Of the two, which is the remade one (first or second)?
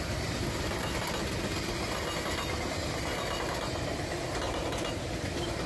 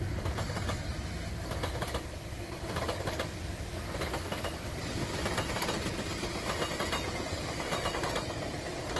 second